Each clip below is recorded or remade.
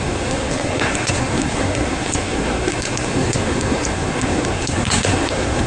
remade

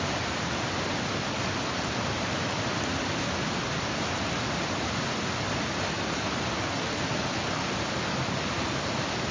recorded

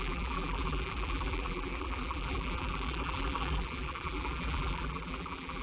remade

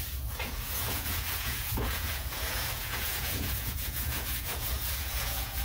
remade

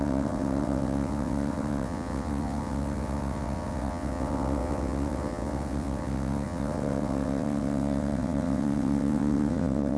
remade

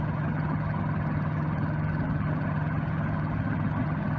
remade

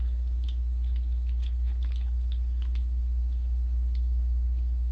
remade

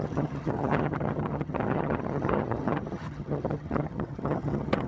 remade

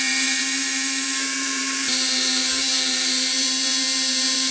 remade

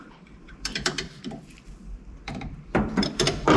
remade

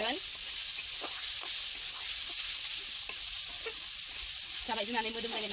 recorded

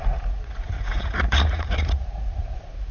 remade